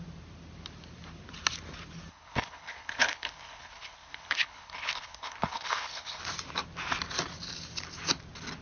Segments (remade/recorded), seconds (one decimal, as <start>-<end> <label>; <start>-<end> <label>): 0.0-2.1 recorded; 2.1-6.2 remade; 6.2-8.6 recorded